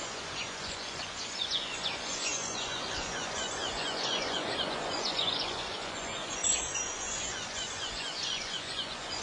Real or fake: fake